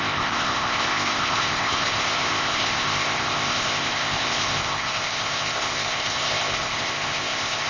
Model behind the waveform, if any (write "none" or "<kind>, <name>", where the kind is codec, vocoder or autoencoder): codec, ZipCodec